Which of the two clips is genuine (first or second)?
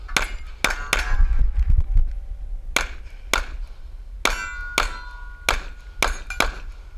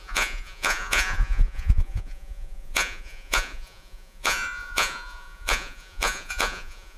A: first